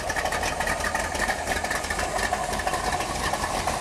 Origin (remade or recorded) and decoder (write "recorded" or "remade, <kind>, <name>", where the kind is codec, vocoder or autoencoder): remade, vocoder, BigVGAN v2